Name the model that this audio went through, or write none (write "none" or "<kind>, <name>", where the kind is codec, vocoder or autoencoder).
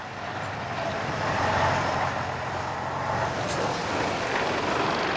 none